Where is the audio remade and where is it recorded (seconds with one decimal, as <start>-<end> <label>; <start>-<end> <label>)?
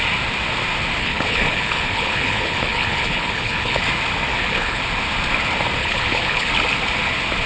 0.0-1.0 recorded; 1.0-3.8 remade; 3.8-4.3 recorded; 4.3-4.8 remade; 4.8-5.8 recorded; 5.8-6.5 remade; 6.5-7.5 recorded